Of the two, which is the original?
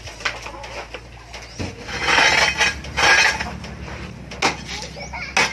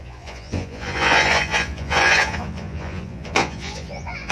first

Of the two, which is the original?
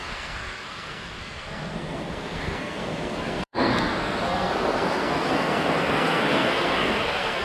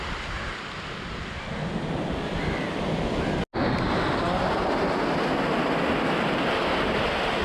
second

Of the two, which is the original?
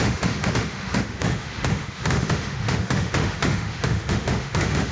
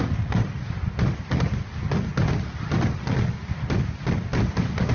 second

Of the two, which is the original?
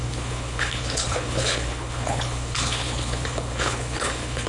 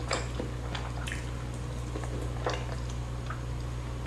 second